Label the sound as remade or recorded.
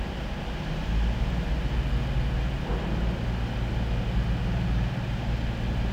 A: recorded